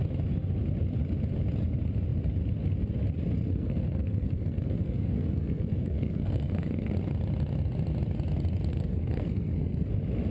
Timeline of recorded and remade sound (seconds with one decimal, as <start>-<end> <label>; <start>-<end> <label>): 0.0-3.5 recorded; 3.5-6.9 remade; 6.9-8.7 recorded; 8.7-9.9 remade; 9.9-10.3 recorded

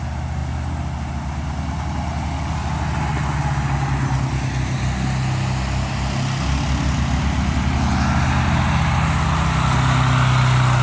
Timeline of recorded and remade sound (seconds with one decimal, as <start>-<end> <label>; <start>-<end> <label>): 0.0-10.8 recorded

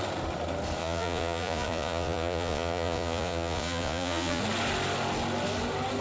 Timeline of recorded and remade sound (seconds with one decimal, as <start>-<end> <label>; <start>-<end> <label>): 0.0-0.8 recorded; 0.8-4.4 remade; 4.4-6.0 recorded

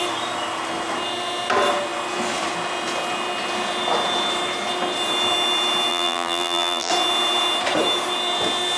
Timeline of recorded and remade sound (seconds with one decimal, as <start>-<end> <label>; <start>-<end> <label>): 0.0-5.9 recorded; 5.9-6.9 remade; 6.9-8.8 recorded

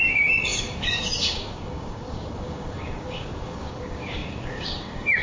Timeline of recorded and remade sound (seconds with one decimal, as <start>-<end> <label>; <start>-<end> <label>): 0.0-5.2 remade